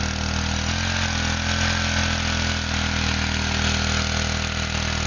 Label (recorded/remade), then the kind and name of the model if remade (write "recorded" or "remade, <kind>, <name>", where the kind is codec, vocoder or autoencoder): recorded